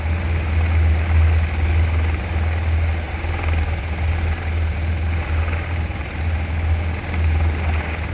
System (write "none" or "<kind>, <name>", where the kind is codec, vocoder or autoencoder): none